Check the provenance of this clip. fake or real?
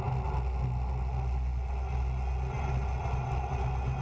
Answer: real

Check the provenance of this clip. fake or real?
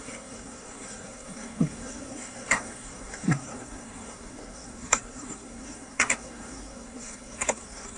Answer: fake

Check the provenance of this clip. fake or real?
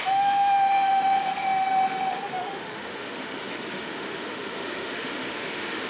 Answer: fake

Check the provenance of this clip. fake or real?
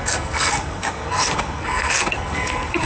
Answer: fake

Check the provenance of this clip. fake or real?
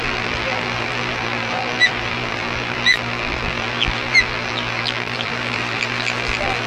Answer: fake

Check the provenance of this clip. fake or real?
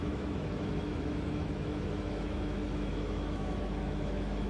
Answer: fake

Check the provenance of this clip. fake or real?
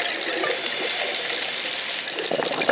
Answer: real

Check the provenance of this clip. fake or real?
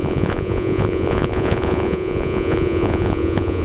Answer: fake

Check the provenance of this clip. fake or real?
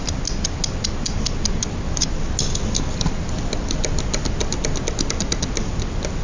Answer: real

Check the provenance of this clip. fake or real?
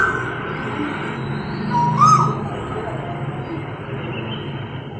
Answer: real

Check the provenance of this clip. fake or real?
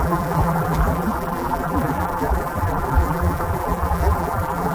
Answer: fake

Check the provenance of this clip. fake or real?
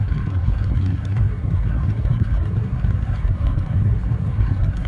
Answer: fake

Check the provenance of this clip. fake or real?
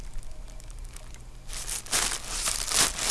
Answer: real